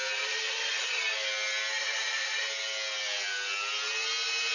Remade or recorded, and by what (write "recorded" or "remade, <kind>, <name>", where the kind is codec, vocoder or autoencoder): recorded